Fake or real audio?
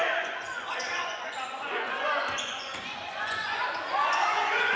fake